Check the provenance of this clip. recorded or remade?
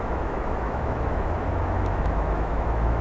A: remade